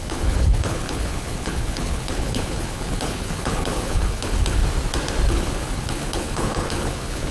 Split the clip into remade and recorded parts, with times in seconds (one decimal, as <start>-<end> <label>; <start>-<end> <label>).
0.0-4.6 remade; 4.6-5.3 recorded; 5.3-7.3 remade